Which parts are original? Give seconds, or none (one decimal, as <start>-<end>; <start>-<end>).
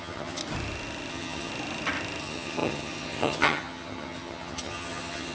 0.4-1.1; 1.5-2.2